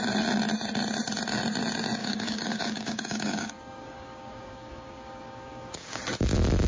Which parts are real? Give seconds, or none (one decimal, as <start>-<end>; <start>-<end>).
0.0-2.0; 6.0-6.7